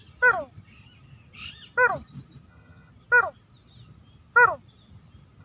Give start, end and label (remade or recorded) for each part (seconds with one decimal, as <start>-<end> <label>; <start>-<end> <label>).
0.0-2.5 recorded; 2.5-2.9 remade; 2.9-5.4 recorded